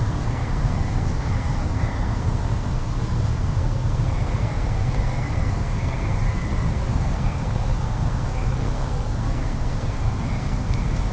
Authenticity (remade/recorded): remade